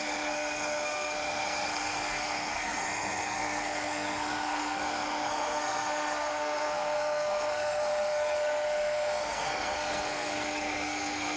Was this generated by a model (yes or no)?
yes